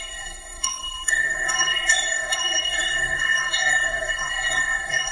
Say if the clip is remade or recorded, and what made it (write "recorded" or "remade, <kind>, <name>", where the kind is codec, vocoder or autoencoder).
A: remade, codec, SNAC